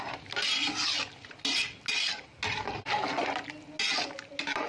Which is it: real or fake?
real